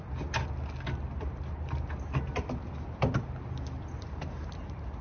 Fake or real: real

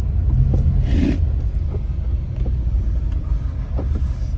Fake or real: real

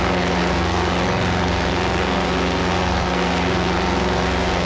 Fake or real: fake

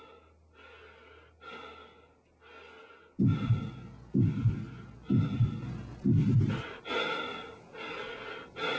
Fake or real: real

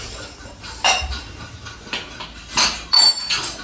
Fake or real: real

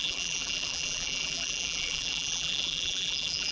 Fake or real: fake